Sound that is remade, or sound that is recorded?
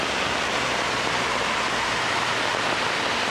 recorded